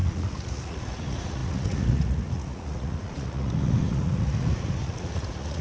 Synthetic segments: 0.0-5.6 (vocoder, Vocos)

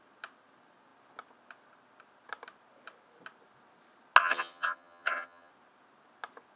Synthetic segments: 4.2-5.5 (vocoder, HiFi-GAN)

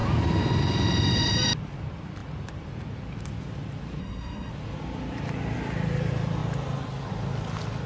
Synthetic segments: 4.0-4.5 (codec, SNAC)

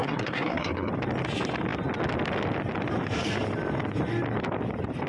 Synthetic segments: 0.0-0.9 (codec, SNAC)

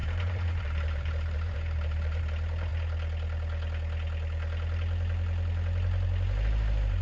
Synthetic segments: 0.0-2.2 (vocoder, BigVGAN v2)

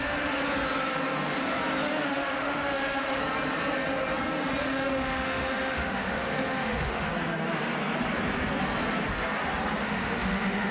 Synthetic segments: 0.0-0.4 (autoencoder, DAC-VAE); 2.1-3.2; 4.6-7.1; 9.8-10.7

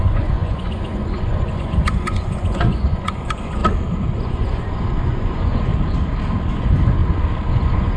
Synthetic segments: 0.0-3.6 (vocoder, Vocos); 4.2-5.7; 6.5-7.0; 7.5-8.0